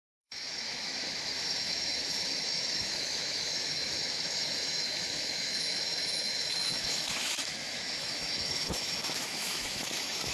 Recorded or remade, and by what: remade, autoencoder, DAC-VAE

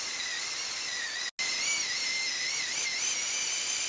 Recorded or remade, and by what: recorded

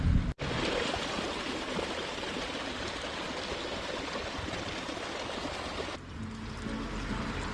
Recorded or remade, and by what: recorded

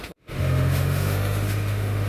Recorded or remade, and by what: remade, autoencoder, DAC-VAE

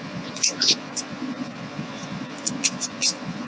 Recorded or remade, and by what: remade, vocoder, Vocos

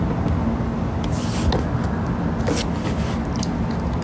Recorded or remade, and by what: recorded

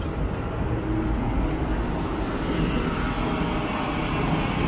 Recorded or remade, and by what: recorded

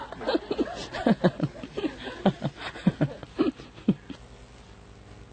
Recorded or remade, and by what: recorded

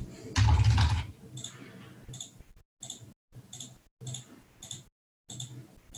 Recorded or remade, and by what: recorded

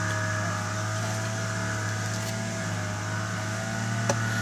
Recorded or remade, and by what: recorded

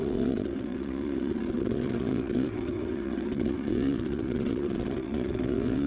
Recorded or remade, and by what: remade, vocoder, WaveNeXt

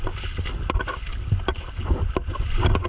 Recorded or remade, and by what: recorded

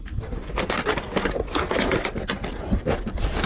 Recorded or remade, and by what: recorded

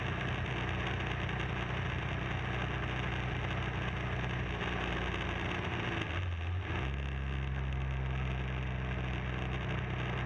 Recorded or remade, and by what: recorded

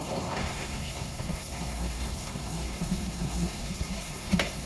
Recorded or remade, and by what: remade, codec, SNAC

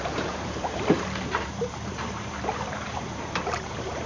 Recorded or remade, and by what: remade, vocoder, BigVGAN v2